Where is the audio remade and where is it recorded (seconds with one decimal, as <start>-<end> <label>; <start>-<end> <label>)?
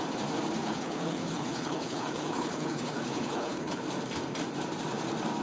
0.0-0.6 recorded; 0.6-3.8 remade; 3.8-5.4 recorded